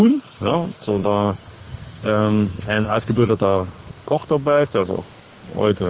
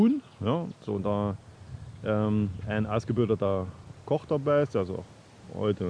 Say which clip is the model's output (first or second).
first